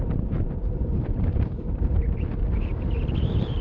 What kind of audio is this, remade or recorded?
remade